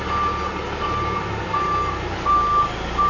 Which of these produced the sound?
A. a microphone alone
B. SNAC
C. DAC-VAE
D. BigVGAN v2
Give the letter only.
A